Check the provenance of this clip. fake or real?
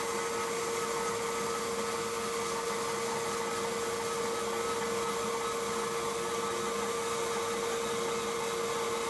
real